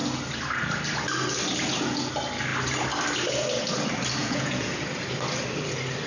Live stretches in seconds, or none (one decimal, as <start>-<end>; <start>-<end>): 0.0-4.2; 4.7-6.1